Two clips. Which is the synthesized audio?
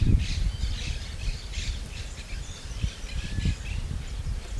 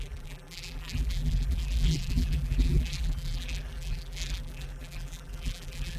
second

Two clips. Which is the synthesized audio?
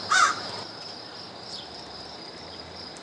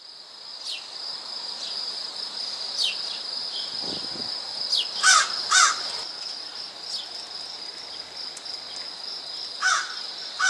first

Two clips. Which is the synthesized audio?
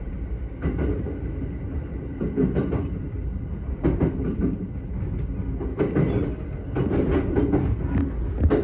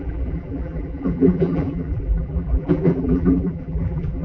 second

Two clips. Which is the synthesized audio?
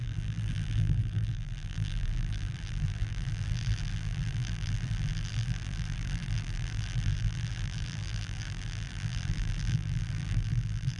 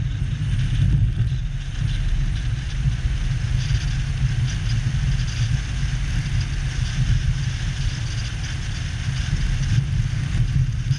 first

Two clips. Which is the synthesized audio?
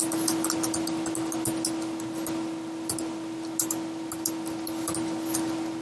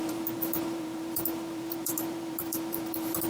second